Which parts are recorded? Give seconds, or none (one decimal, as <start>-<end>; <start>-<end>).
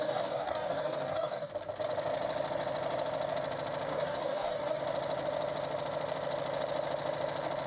1.5-3.9; 4.8-7.7